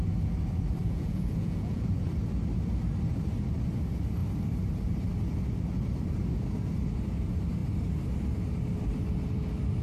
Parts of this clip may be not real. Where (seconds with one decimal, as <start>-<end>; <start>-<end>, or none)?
0.8-1.9